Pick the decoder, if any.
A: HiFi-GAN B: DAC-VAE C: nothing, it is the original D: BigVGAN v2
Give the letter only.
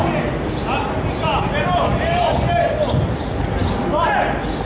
C